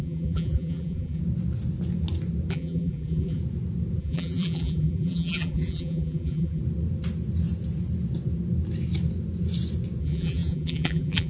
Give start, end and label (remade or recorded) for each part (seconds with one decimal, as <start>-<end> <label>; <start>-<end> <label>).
0.0-1.2 remade; 1.2-2.5 recorded; 2.5-3.4 remade; 3.4-4.0 recorded; 4.0-6.6 remade; 6.6-10.0 recorded; 10.0-11.3 remade